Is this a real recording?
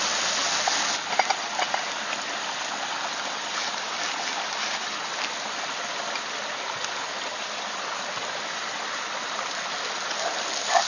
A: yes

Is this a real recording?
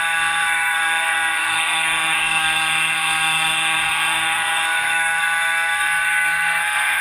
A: no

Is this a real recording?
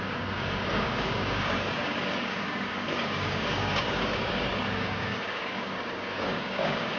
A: no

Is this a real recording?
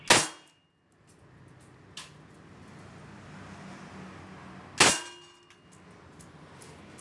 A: yes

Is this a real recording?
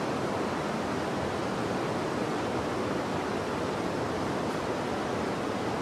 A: yes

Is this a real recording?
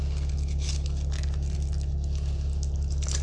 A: yes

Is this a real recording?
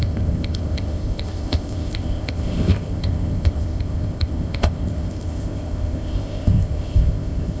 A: no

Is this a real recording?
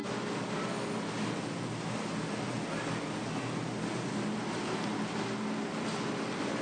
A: yes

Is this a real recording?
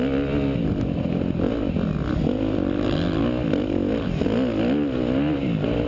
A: yes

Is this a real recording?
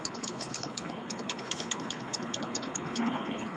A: no